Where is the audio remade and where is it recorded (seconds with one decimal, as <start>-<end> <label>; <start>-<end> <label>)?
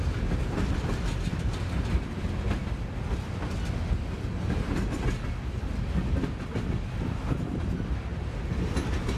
0.0-9.2 recorded